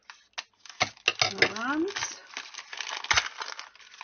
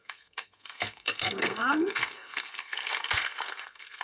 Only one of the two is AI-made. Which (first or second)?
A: second